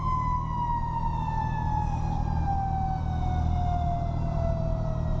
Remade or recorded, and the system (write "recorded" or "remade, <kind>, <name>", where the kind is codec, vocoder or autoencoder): recorded